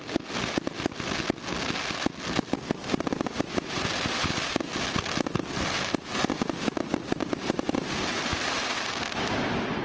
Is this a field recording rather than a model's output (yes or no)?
yes